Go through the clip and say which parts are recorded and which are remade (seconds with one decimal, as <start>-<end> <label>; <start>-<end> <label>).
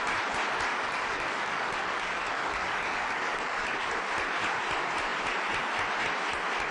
0.0-0.7 recorded; 0.7-3.9 remade; 3.9-6.7 recorded